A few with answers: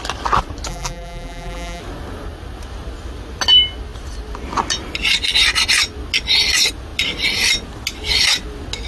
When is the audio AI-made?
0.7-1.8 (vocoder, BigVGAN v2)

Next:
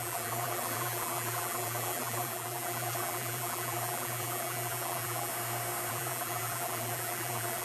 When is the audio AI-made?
0.0-5.3 (vocoder, BigVGAN v2); 5.9-7.6

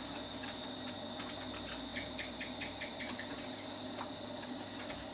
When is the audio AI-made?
1.9-4.5 (vocoder, BigVGAN v2)

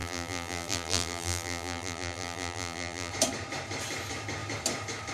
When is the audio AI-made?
0.0-3.1 (vocoder, BigVGAN v2)

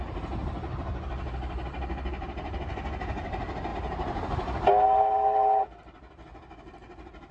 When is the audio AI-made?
none

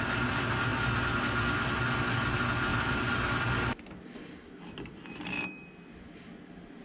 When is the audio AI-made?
2.7-3.2 (vocoder, BigVGAN v2)